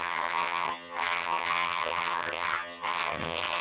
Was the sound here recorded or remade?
remade